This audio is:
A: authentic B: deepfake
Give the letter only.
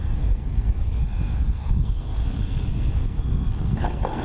B